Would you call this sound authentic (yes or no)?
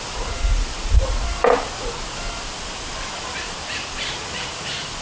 yes